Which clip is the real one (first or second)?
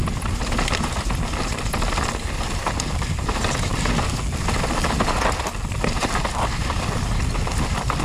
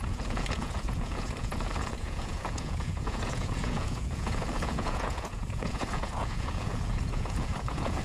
first